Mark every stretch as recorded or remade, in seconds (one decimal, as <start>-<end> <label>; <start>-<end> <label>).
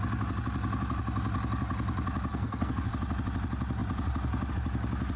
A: 0.0-2.3 recorded; 2.3-2.9 remade; 2.9-5.2 recorded